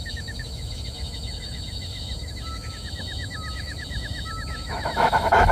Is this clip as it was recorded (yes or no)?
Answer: no